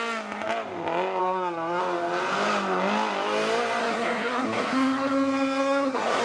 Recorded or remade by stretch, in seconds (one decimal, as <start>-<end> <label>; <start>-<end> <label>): 0.0-1.2 recorded; 1.2-1.8 remade; 1.8-3.8 recorded; 3.8-6.2 remade

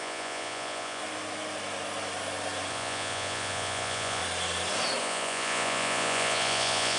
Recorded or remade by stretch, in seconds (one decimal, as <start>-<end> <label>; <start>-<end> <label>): 0.0-1.0 remade; 1.0-2.7 recorded; 2.7-4.2 remade; 4.2-5.0 recorded; 5.0-7.0 remade

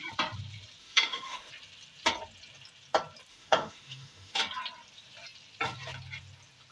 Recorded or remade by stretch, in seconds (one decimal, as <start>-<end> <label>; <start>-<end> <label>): 0.0-0.8 recorded; 0.8-1.5 remade; 1.5-3.3 recorded; 3.3-4.4 remade; 4.4-6.7 recorded

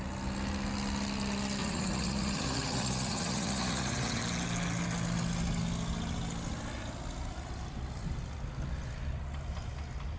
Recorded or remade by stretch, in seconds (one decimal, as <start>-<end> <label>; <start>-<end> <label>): 0.0-1.6 recorded; 1.6-4.2 remade; 4.2-10.2 recorded

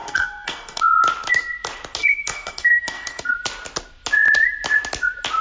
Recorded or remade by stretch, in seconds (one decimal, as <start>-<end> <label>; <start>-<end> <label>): 0.0-0.8 remade; 0.8-2.0 recorded; 2.0-3.3 remade; 3.3-5.4 recorded

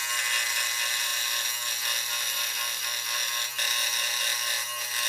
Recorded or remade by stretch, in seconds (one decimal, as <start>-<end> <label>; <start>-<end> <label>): 0.0-5.1 recorded

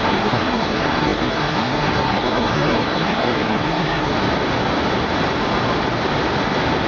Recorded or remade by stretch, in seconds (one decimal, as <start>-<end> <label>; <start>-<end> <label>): 0.0-4.1 remade; 4.1-6.9 recorded